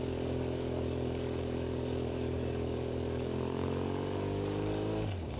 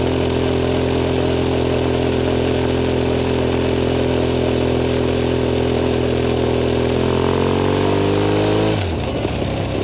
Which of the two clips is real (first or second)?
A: second